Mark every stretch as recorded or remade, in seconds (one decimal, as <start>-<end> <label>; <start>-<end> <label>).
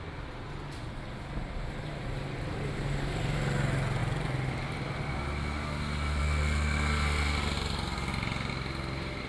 0.0-9.3 recorded